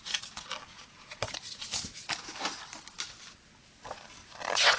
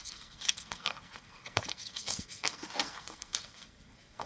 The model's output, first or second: second